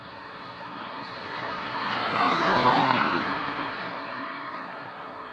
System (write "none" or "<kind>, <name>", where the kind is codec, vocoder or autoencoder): codec, SNAC